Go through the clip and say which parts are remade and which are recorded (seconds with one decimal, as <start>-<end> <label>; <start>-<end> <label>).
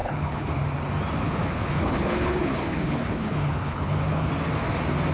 0.0-0.6 remade; 0.6-1.2 recorded; 1.2-4.3 remade; 4.3-5.1 recorded